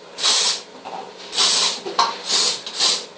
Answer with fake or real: real